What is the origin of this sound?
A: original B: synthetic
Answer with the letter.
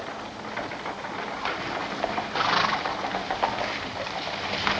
A